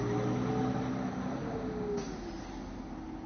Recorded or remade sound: recorded